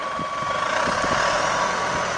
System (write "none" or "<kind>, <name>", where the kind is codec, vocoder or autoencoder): none